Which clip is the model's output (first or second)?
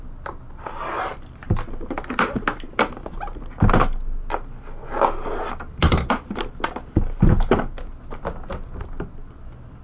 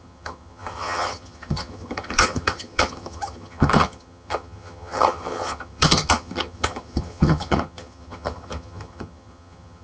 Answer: second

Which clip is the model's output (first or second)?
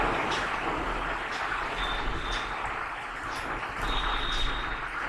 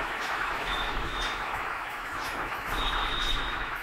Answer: second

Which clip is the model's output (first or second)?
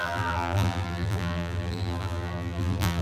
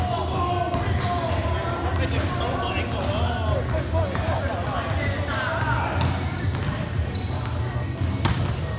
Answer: first